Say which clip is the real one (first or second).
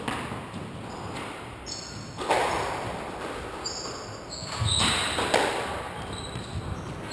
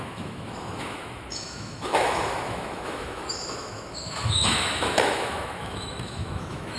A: first